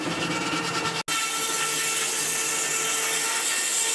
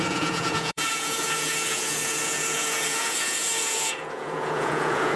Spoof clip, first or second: second